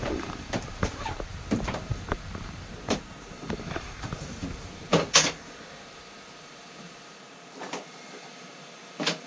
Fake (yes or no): yes